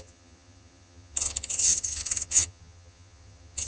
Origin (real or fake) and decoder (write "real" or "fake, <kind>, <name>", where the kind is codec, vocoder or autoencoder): fake, vocoder, HiFi-GAN